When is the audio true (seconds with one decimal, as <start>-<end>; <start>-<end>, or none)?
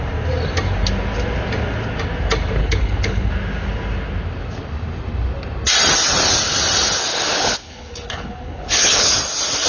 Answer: 0.0-2.6; 3.3-7.1; 9.1-9.7